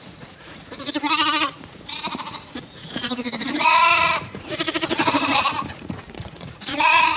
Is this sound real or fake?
fake